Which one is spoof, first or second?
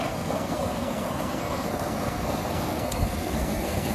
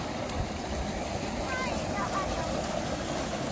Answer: first